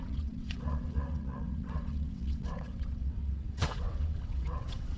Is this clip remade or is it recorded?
remade